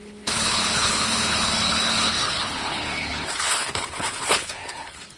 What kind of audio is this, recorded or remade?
remade